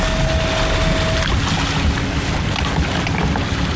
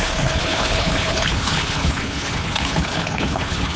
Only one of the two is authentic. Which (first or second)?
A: first